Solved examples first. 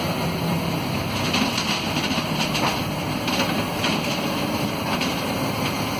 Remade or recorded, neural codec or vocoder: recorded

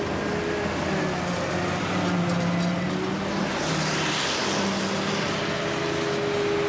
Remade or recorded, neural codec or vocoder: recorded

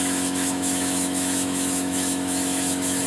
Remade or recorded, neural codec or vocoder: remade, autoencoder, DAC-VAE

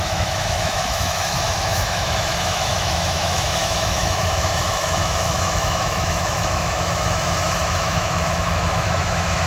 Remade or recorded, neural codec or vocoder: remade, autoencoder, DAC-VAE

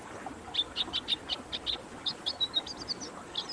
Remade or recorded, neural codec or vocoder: recorded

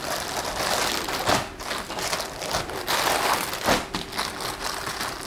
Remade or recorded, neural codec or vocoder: recorded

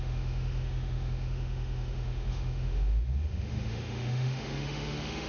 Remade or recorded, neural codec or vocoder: remade, autoencoder, DAC-VAE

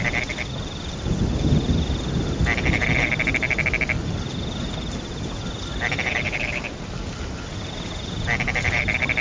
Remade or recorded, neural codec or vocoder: recorded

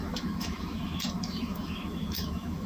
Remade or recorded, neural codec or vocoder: remade, autoencoder, DAC-VAE